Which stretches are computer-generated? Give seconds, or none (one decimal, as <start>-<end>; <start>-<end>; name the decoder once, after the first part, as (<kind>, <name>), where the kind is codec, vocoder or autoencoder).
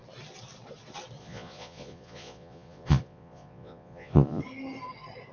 1.2-4.4 (vocoder, Vocos)